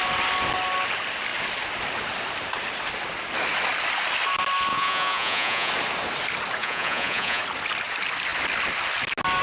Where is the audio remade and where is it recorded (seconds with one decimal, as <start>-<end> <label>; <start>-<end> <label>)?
0.0-4.7 recorded; 4.7-5.7 remade; 5.7-6.6 recorded; 6.6-7.4 remade; 7.4-9.4 recorded